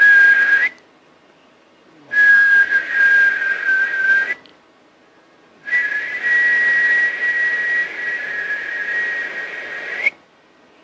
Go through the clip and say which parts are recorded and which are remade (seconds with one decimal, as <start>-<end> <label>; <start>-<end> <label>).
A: 0.0-2.3 recorded; 2.3-2.9 remade; 2.9-10.8 recorded